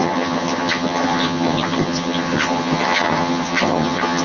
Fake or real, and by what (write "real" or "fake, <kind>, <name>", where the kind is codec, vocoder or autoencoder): fake, vocoder, HiFi-GAN